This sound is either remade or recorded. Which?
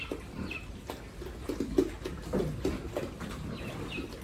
recorded